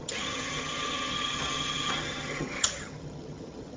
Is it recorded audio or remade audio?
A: remade